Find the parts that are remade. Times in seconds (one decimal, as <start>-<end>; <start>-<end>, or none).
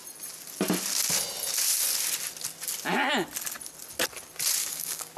4.6-5.2